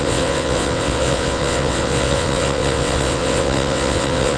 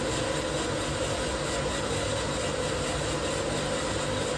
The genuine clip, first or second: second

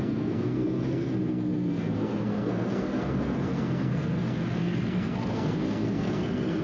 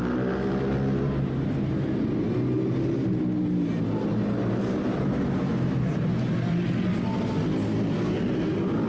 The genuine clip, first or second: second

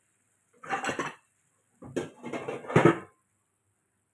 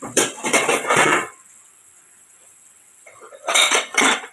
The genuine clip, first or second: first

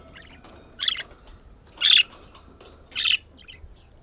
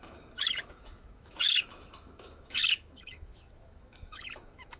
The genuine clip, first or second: first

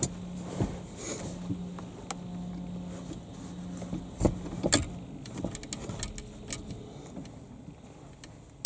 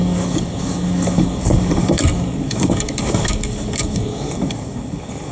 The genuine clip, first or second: first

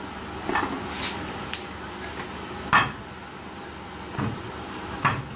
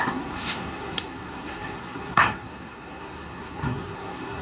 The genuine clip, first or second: first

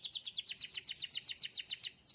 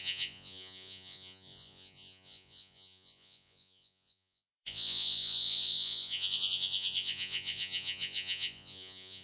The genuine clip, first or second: first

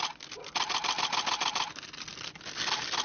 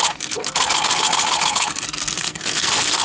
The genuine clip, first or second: first